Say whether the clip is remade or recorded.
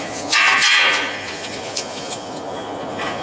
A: remade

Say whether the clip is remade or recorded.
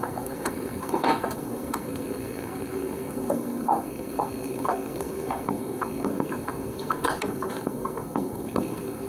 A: remade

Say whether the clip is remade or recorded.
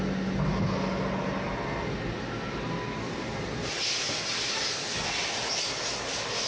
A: recorded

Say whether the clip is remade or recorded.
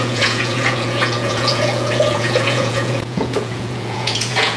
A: remade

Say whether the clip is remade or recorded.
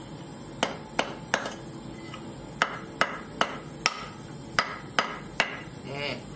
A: recorded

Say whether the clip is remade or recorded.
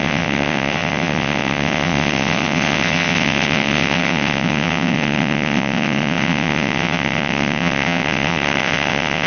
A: remade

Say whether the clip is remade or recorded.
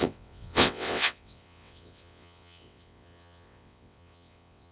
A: remade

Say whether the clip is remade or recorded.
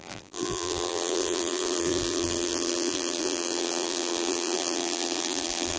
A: remade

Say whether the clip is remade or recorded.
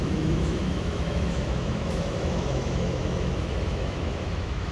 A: remade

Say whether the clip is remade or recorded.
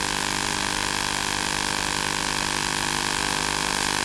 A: recorded